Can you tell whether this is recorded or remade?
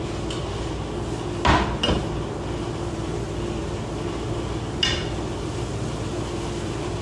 recorded